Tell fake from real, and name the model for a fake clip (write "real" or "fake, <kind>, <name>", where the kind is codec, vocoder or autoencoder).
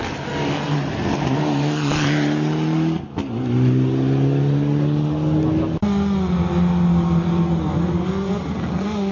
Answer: real